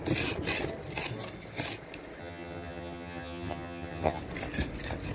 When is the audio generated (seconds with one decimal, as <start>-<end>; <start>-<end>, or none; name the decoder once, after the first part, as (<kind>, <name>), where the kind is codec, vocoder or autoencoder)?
2.2-4.2 (vocoder, HiFi-GAN)